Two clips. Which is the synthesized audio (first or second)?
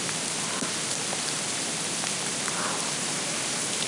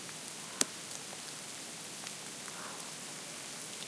first